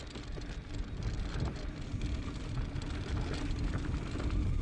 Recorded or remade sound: recorded